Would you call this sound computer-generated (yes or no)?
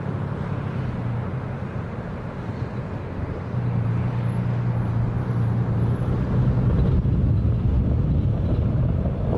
no